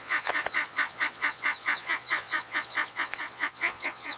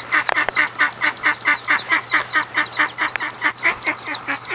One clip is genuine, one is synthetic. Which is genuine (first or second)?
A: second